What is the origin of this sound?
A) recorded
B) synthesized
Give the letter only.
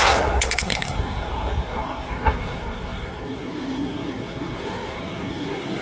B